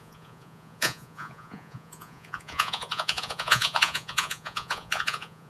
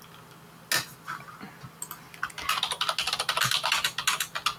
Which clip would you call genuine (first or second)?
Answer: second